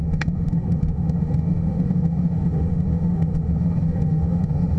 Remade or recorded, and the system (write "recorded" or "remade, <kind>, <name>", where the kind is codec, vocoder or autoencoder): remade, autoencoder, DAC-VAE